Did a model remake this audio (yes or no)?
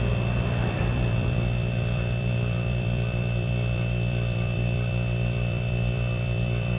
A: yes